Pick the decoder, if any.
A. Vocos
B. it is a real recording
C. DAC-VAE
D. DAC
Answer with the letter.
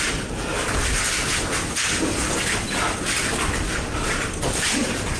B